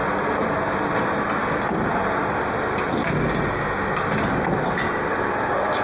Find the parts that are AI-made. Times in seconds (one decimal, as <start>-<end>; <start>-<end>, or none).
none